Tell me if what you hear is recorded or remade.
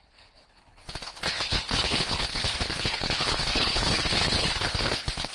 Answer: remade